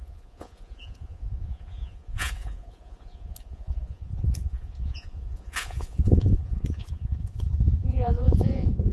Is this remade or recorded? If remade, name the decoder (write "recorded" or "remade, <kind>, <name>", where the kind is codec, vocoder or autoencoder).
remade, vocoder, Vocos